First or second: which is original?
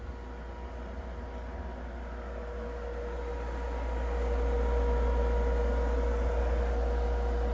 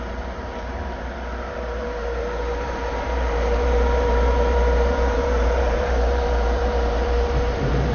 first